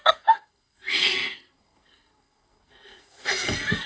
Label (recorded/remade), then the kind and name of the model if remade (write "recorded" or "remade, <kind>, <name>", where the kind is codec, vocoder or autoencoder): remade, codec, SNAC